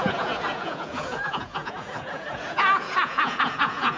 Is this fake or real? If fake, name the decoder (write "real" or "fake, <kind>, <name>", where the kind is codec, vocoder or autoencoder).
fake, vocoder, Vocos